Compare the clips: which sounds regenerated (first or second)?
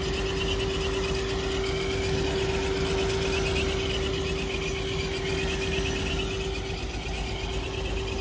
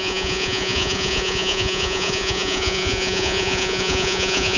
second